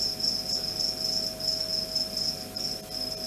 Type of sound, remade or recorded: recorded